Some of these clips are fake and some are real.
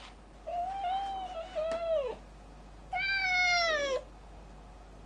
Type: real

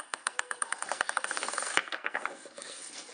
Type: fake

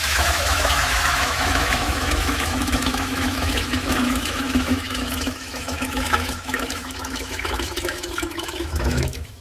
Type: fake